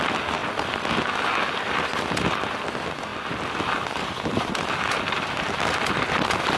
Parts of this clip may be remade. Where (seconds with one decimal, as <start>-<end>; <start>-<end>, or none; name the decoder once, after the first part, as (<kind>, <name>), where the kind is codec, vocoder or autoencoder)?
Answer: none